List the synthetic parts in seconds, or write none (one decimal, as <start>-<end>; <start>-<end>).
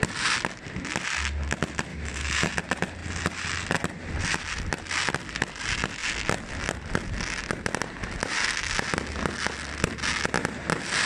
1.9-2.5